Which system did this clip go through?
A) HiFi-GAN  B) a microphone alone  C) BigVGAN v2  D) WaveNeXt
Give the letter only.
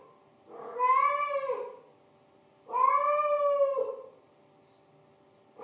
B